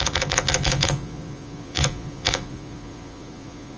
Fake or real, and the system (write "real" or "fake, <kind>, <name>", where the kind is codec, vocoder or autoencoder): fake, vocoder, Vocos